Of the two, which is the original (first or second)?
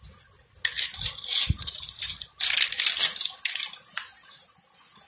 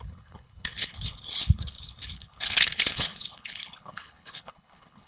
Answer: first